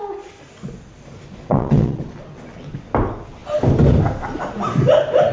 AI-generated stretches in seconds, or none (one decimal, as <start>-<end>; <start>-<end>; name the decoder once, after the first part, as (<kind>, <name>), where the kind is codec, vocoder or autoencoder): 1.4-2.0 (vocoder, Vocos)